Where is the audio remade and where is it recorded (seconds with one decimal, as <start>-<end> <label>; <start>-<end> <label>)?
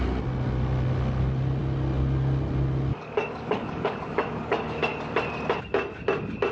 0.0-2.9 recorded; 2.9-4.8 remade; 4.8-6.5 recorded